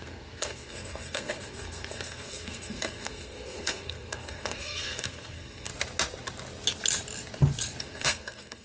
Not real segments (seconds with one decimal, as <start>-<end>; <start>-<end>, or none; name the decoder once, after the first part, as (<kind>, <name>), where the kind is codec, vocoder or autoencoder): 0.0-5.7 (codec, SNAC); 7.8-8.6